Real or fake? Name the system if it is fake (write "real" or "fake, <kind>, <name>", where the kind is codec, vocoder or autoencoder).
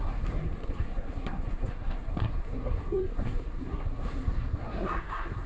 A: fake, codec, SNAC